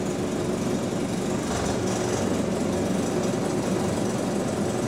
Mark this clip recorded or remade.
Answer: recorded